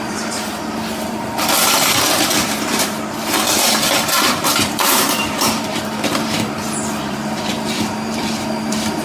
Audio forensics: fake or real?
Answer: fake